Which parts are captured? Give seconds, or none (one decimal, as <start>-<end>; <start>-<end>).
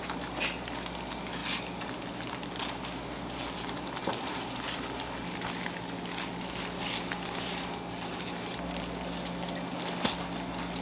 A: 0.0-10.8